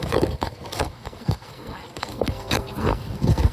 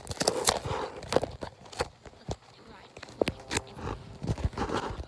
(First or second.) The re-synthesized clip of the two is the first